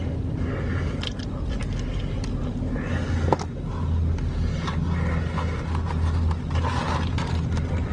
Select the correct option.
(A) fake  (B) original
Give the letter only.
B